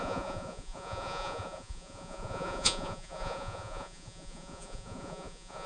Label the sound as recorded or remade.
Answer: remade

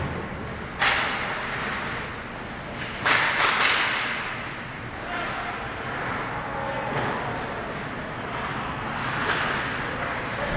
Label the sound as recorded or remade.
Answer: recorded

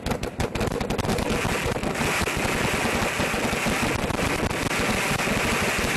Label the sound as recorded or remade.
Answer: recorded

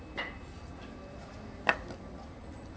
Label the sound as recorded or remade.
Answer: recorded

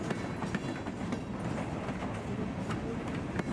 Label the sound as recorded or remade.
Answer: recorded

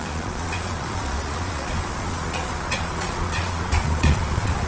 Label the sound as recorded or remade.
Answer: remade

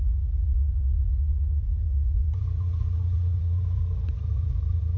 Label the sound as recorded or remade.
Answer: remade